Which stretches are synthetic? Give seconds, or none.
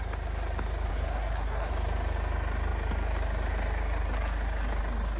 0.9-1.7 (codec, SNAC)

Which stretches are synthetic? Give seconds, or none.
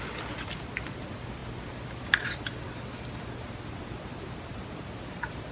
0.0-1.4 (vocoder, BigVGAN v2); 3.8-5.5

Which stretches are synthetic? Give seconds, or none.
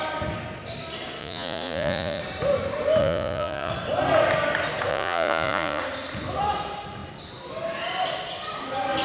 1.2-2.2 (vocoder, Vocos); 3.0-3.7; 4.9-5.8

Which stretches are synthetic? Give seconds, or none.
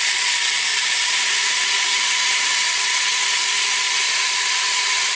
none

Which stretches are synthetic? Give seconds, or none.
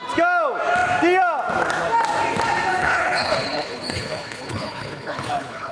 2.8-5.7 (codec, HILCodec)